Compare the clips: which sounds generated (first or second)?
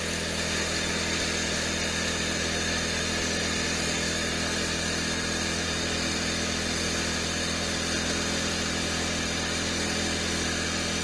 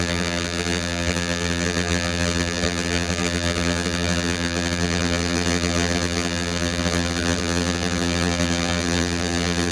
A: second